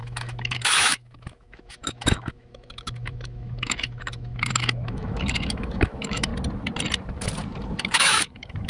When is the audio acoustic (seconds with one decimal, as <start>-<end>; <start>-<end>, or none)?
6.3-7.8